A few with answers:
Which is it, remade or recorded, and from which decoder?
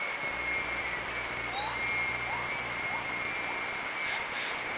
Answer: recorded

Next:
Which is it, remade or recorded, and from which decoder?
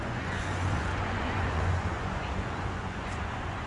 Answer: remade, vocoder, Vocos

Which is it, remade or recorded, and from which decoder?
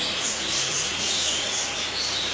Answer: remade, vocoder, Vocos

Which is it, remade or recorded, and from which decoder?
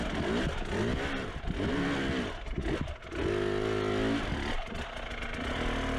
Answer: recorded